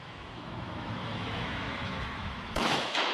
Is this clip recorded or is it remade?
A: remade